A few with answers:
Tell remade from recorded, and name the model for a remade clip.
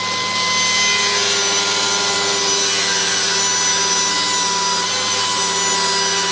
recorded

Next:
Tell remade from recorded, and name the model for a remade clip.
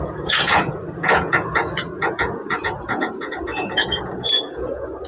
remade, vocoder, Vocos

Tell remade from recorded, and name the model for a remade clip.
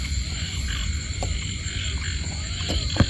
remade, vocoder, Vocos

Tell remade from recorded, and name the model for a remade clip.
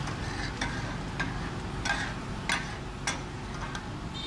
recorded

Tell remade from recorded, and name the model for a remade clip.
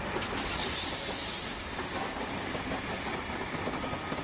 recorded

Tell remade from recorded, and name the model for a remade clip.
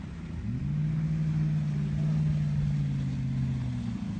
recorded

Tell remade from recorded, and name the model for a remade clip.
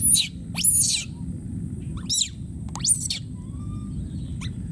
recorded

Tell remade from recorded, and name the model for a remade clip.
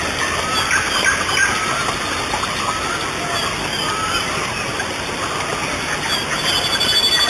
recorded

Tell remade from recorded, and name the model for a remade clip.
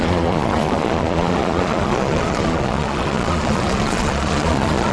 remade, vocoder, Vocos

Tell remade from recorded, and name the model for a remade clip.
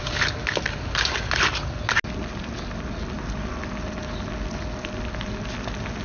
recorded